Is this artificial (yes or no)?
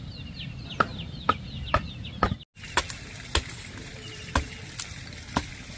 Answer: no